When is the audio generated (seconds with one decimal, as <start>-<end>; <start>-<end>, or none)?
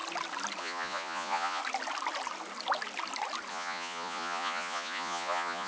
0.6-1.6; 3.5-5.7